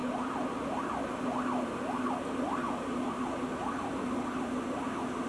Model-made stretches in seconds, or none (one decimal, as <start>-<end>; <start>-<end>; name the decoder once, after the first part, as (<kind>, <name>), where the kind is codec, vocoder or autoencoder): none